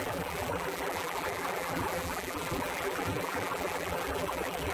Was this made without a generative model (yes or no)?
no